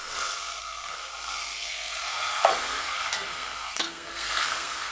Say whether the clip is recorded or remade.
remade